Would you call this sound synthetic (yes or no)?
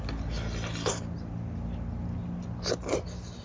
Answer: no